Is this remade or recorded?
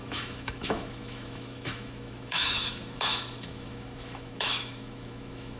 remade